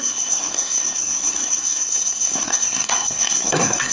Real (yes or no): no